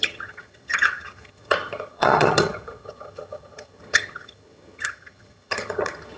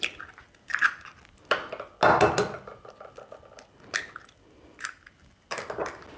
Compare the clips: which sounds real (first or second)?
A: second